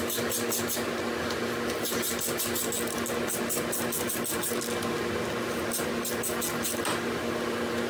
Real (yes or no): yes